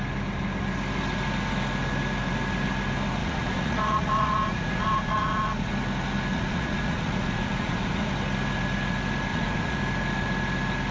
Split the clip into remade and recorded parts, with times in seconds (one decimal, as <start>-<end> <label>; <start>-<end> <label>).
0.0-3.2 recorded; 3.2-5.7 remade; 5.7-6.3 recorded; 6.3-8.1 remade; 8.1-9.3 recorded; 9.3-9.8 remade; 9.8-10.9 recorded